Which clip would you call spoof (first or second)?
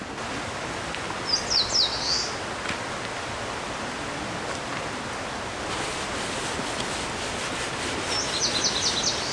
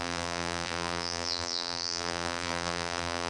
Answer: second